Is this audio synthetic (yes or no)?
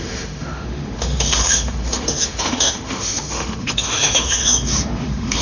yes